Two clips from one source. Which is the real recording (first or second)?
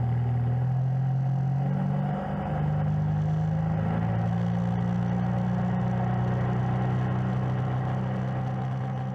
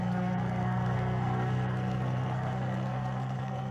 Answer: first